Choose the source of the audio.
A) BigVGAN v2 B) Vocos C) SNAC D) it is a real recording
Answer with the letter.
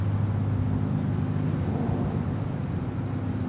D